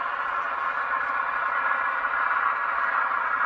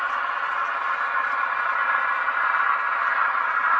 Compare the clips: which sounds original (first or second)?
second